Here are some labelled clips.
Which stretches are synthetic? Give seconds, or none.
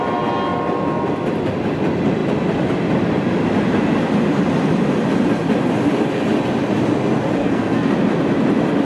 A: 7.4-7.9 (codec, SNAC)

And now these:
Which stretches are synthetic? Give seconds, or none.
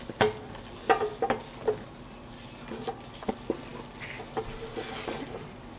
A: none